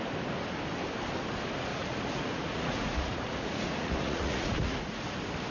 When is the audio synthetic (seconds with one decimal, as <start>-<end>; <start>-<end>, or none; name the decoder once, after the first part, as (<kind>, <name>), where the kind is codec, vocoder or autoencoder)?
1.7-5.0 (vocoder, Vocos)

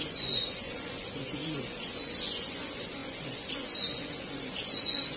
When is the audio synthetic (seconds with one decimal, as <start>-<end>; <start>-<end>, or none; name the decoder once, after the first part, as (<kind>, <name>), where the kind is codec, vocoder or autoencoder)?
0.0-5.2 (vocoder, Vocos)

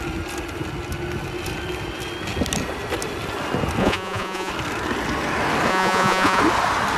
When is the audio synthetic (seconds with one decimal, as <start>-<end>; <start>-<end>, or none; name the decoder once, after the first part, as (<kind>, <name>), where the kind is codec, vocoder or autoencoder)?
3.8-4.5 (vocoder, Vocos); 5.7-6.4